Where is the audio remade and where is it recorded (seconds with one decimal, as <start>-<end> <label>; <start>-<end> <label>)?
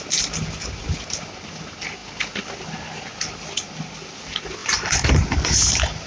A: 0.0-4.6 recorded; 4.6-5.1 remade; 5.1-6.1 recorded